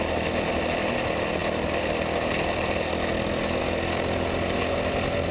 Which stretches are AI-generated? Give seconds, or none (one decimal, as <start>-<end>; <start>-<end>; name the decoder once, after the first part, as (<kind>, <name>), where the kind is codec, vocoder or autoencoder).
none